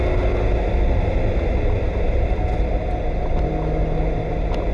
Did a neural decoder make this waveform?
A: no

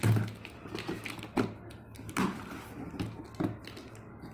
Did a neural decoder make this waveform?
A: no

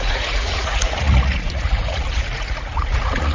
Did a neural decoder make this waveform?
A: yes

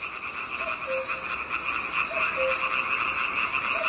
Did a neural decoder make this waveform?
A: no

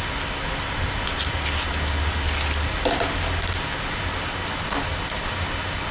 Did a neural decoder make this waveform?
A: no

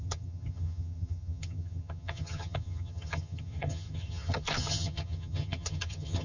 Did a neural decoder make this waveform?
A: yes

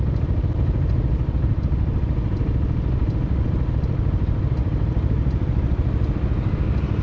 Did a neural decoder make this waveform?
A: no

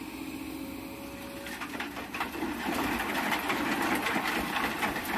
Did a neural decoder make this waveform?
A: no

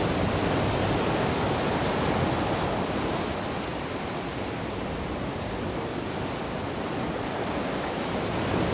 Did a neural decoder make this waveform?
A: no